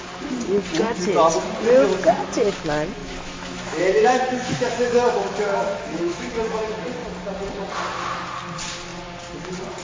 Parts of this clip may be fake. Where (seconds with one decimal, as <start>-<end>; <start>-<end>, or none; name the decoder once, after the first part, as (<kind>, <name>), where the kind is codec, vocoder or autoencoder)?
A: 3.0-6.3 (autoencoder, DAC-VAE)